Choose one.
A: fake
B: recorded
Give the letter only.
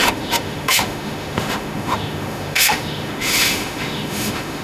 A